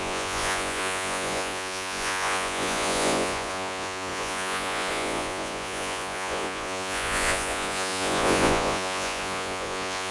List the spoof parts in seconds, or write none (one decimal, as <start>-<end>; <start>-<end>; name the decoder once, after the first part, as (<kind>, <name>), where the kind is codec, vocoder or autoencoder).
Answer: 0.0-10.1 (vocoder, Vocos)

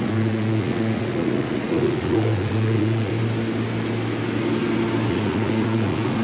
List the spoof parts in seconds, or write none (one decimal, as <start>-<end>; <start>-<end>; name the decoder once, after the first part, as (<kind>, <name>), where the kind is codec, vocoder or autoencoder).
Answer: 0.0-3.1 (vocoder, Vocos); 5.1-6.2

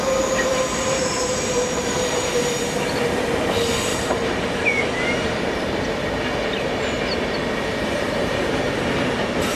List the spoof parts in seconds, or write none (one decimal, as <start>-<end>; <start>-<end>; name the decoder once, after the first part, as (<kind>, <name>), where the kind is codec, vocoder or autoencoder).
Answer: 0.5-2.8 (vocoder, BigVGAN v2); 3.9-5.6; 7.7-9.6